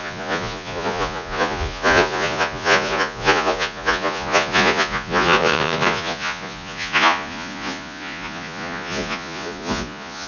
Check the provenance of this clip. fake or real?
fake